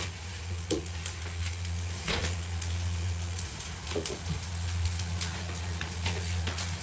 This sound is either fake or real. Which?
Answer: fake